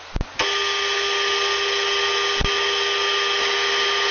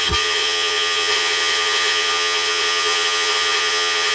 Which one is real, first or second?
first